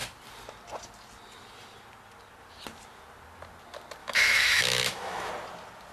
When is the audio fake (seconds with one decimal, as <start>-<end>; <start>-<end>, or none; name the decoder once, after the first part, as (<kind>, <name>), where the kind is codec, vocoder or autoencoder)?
4.0-5.3 (autoencoder, DAC-VAE)